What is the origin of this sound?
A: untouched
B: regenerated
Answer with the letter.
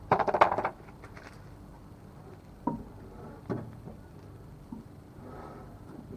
A